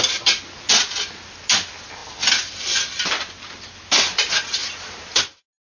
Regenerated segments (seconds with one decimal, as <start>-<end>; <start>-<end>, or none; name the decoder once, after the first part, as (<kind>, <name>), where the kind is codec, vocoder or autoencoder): 4.6-5.2 (vocoder, BigVGAN v2)